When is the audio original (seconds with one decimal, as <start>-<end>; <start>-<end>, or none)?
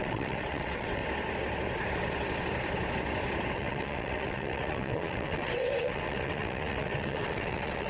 1.0-3.5